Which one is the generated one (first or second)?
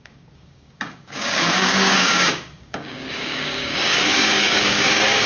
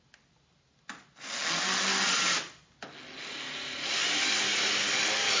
first